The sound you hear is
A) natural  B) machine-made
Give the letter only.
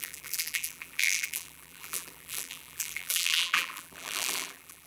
B